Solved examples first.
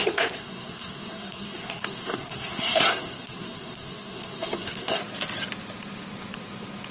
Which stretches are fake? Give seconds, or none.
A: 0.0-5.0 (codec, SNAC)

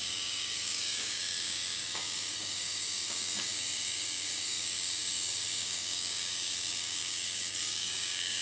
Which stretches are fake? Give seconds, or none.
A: 0.0-8.4 (codec, DAC)

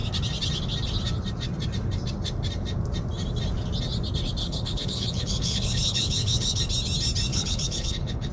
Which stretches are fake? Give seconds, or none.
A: 4.4-6.6 (codec, HILCodec); 7.3-8.3

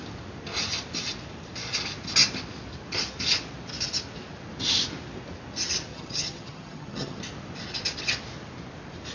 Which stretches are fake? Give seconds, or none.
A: 5.9-7.2 (vocoder, HiFi-GAN)

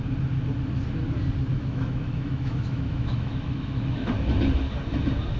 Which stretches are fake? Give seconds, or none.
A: 1.5-4.1 (autoencoder, DAC-VAE)

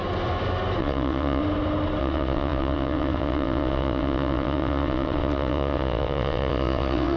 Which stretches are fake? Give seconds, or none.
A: 0.8-1.4 (vocoder, WaveNeXt); 2.0-7.2

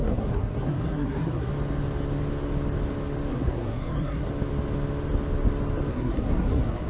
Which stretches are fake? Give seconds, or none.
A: 0.0-1.5 (codec, SNAC); 3.3-4.3; 5.9-6.9